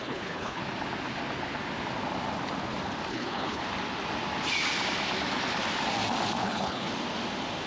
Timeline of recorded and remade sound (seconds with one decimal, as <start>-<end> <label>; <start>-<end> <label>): 0.0-0.6 remade; 0.6-3.1 recorded; 3.1-3.6 remade; 3.6-6.4 recorded; 6.4-6.9 remade; 6.9-7.7 recorded